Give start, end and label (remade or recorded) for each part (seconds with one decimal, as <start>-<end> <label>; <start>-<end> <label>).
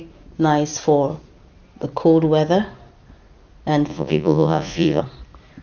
0.0-3.9 recorded; 3.9-5.0 remade; 5.0-5.6 recorded